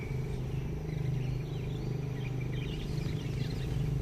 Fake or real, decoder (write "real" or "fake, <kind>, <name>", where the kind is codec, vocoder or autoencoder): real